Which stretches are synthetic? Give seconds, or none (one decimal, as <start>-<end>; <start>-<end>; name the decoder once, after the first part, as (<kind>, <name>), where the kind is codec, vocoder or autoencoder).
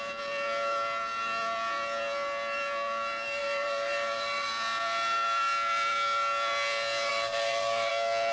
3.4-4.5 (vocoder, BigVGAN v2); 7.1-7.9